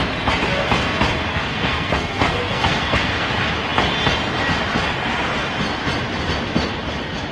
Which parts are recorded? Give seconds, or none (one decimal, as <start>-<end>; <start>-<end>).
0.0-1.3; 3.3-7.3